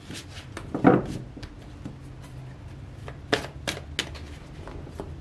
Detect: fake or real real